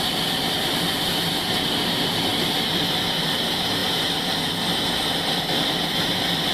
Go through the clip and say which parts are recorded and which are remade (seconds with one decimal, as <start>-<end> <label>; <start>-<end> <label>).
0.0-6.5 recorded